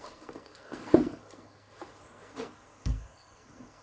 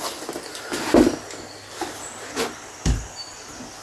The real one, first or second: second